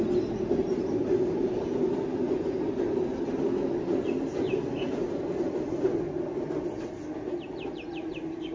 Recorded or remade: recorded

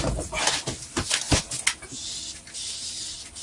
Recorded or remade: recorded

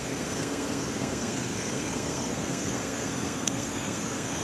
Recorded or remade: remade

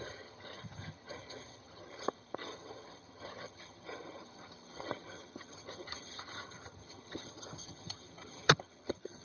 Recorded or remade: remade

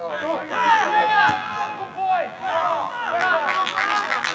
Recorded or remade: remade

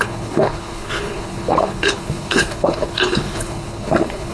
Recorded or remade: remade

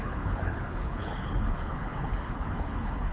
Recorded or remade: remade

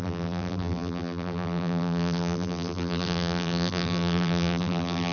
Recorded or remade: remade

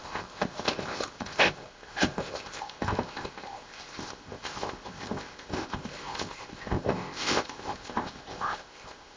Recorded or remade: remade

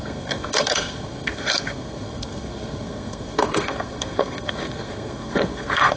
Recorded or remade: remade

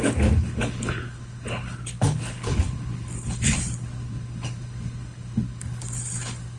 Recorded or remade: remade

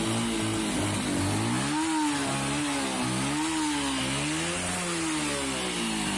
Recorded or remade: recorded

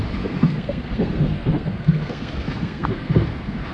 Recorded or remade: remade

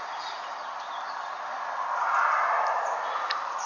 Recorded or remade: recorded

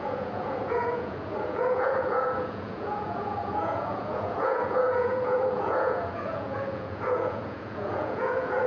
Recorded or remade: remade